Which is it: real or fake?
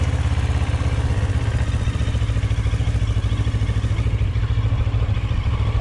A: real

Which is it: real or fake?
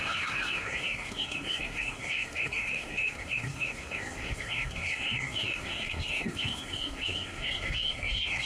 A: fake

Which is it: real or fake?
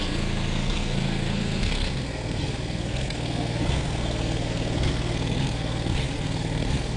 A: fake